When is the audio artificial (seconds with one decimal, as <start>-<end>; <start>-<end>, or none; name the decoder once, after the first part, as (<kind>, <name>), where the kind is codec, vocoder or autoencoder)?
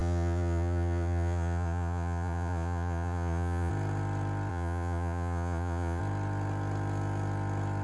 0.0-3.7 (vocoder, Vocos); 4.5-6.0